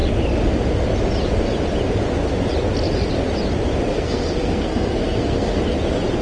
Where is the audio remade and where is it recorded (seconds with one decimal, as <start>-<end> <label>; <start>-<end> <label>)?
0.0-3.9 recorded; 3.9-5.6 remade; 5.6-6.2 recorded